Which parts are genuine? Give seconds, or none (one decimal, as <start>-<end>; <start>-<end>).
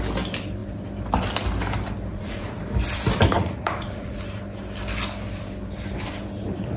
0.0-2.1; 2.6-3.4; 4.4-6.8